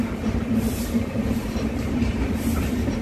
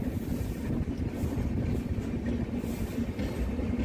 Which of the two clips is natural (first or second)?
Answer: second